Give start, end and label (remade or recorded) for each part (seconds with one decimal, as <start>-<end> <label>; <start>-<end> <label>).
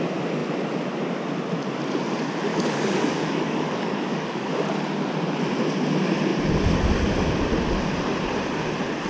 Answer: 0.0-2.5 recorded; 2.5-4.5 remade; 4.5-9.1 recorded